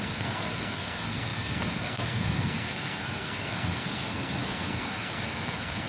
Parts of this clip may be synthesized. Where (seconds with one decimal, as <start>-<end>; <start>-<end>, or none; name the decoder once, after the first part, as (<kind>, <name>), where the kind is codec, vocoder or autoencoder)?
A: 0.0-5.9 (codec, SNAC)